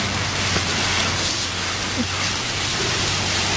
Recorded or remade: recorded